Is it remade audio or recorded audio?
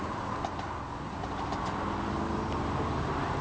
recorded